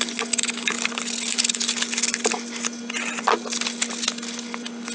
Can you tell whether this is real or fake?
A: real